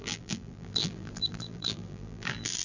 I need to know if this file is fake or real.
fake